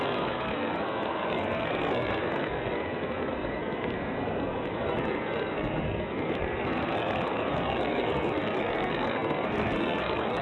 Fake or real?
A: fake